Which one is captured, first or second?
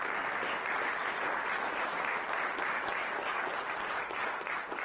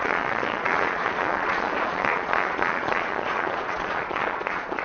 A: first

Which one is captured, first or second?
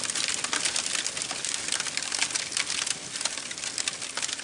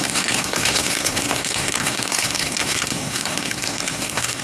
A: first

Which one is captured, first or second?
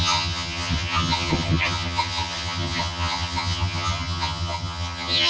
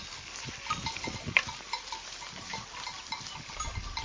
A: second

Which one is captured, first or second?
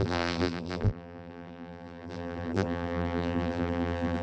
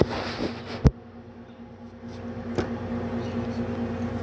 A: second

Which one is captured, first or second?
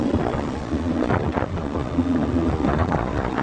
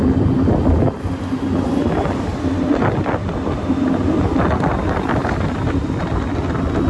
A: second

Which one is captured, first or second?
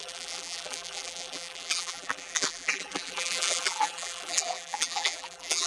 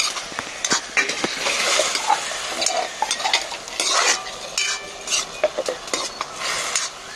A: second